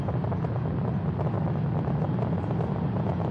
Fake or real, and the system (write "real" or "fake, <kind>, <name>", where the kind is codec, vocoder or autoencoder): real